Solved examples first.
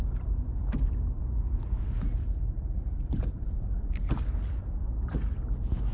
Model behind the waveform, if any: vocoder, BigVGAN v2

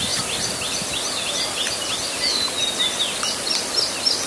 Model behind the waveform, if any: none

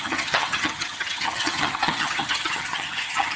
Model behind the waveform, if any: vocoder, HiFi-GAN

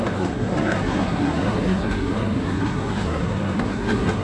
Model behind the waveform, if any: codec, SNAC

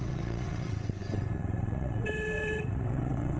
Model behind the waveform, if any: vocoder, WaveNeXt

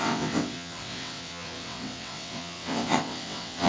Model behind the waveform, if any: vocoder, WaveNeXt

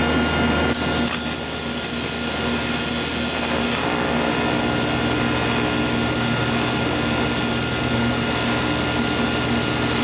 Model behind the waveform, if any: none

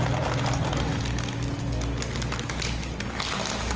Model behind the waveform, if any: none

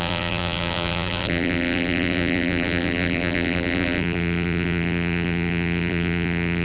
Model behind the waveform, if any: vocoder, BigVGAN v2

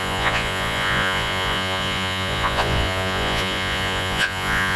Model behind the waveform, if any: vocoder, Vocos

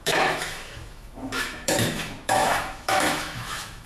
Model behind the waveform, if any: autoencoder, DAC-VAE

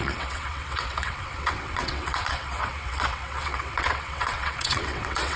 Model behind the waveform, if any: vocoder, WaveNeXt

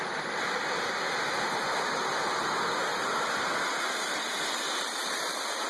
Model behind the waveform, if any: none